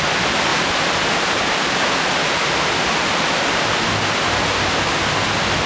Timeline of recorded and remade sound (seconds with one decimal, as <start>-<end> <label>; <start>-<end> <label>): 0.0-5.7 recorded